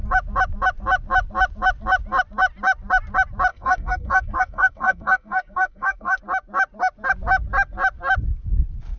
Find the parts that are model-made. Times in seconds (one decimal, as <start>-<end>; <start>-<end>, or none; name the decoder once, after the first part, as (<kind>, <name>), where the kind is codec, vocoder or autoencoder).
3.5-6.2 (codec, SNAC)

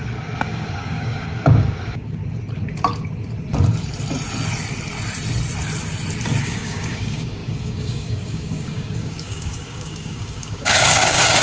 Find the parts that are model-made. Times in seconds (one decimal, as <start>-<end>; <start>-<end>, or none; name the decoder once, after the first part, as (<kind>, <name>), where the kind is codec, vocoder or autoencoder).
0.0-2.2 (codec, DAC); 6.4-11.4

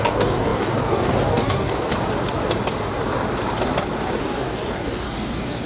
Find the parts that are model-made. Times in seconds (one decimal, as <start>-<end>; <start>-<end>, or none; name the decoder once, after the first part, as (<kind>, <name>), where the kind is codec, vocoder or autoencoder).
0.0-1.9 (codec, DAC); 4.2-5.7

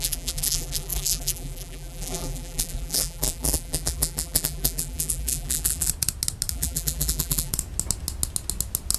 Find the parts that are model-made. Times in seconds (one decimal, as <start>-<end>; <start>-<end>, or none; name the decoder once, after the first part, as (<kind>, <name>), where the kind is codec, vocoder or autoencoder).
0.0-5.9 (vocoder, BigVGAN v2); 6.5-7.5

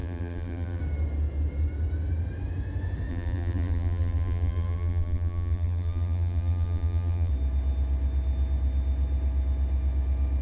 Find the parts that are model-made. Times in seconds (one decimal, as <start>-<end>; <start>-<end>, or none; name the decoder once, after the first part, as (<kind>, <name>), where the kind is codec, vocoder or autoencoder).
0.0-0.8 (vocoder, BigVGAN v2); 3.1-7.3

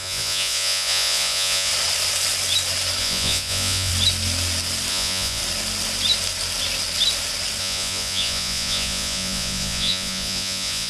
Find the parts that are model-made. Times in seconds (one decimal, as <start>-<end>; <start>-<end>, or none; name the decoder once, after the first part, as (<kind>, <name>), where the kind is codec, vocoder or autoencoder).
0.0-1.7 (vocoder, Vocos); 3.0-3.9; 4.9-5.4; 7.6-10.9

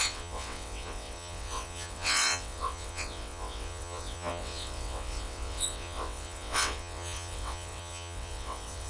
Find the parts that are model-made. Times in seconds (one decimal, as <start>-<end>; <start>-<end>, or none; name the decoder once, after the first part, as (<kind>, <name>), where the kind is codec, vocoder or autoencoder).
0.0-8.9 (vocoder, WaveNeXt)

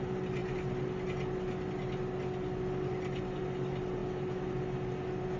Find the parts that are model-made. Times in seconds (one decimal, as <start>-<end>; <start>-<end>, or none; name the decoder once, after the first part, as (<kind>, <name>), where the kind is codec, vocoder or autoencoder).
none